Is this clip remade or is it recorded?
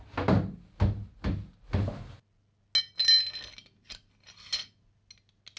recorded